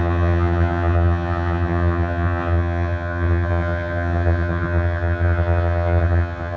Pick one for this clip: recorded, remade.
remade